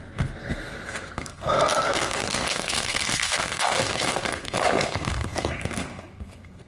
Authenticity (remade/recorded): remade